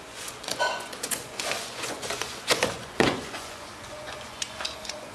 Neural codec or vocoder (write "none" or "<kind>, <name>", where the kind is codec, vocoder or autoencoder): vocoder, Vocos